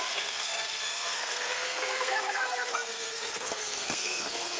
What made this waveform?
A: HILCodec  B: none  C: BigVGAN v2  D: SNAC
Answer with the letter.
D